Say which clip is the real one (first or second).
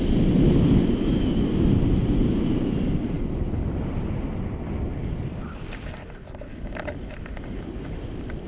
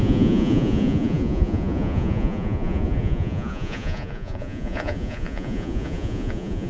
first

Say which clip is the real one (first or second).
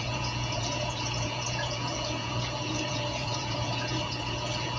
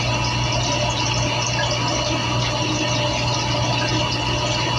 second